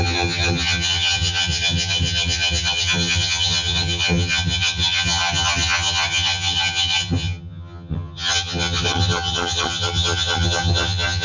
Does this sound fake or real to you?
fake